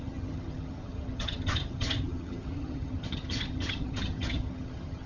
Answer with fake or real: fake